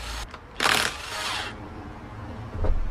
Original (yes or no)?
yes